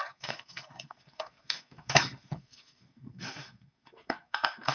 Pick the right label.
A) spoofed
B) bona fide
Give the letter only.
A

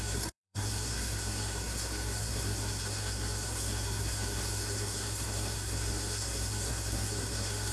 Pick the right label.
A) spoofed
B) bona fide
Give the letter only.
A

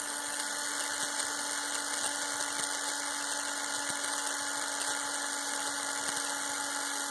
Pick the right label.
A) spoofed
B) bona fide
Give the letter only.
B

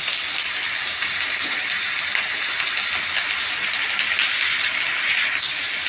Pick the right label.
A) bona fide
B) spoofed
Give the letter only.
A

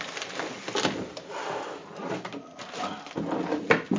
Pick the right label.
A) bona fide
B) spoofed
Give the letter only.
A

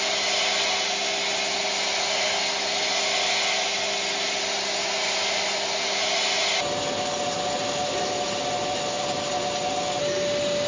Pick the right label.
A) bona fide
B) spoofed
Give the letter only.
A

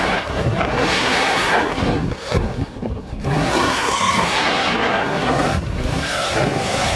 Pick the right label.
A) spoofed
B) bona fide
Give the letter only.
A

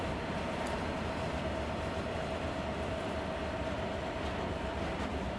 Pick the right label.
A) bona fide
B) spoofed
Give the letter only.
A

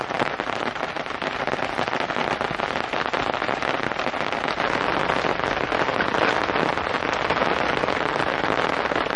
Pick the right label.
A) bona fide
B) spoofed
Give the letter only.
A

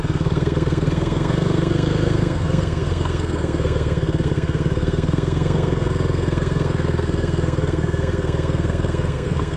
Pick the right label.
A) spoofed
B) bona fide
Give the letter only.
A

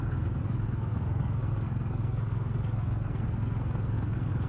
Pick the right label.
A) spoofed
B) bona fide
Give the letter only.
A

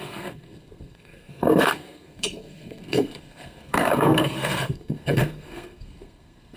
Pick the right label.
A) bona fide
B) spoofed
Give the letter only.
B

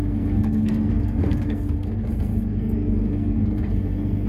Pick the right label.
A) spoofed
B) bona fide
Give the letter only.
A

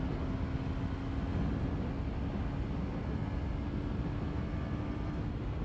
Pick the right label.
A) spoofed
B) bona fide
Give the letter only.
B